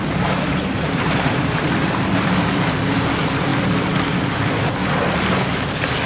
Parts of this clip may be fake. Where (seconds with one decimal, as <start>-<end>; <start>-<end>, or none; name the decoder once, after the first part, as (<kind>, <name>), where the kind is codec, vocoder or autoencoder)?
0.5-1.7 (vocoder, BigVGAN v2)